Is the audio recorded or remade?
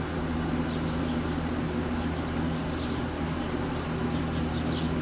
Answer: recorded